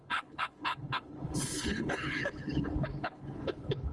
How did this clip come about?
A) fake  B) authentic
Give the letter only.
A